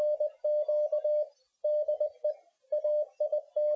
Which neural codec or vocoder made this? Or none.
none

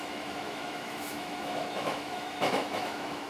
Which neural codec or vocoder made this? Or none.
autoencoder, DAC-VAE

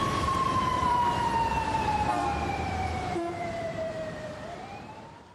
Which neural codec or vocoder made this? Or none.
vocoder, BigVGAN v2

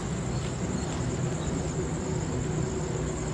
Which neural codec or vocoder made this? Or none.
none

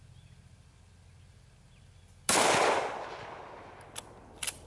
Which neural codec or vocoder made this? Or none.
none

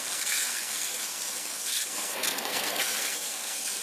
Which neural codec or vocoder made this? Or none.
codec, SNAC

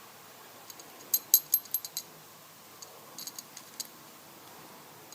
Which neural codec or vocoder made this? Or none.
none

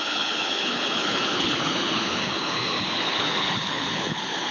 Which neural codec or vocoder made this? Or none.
codec, HILCodec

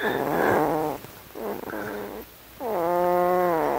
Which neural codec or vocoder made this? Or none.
none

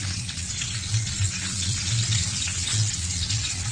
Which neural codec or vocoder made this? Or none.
vocoder, Vocos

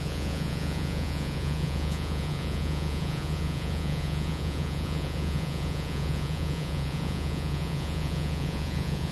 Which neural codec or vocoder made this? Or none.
vocoder, Vocos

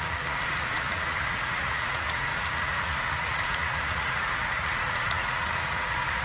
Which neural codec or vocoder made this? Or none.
vocoder, Vocos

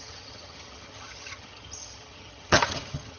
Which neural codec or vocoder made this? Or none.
vocoder, HiFi-GAN